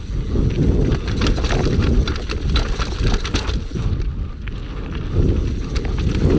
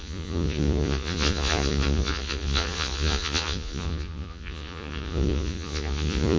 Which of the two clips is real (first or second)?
first